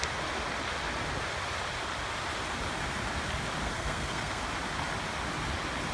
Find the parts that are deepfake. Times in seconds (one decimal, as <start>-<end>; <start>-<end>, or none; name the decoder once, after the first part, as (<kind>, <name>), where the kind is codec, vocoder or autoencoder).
3.6-4.4 (codec, SNAC)